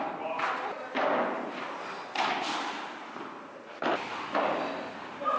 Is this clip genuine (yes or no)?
no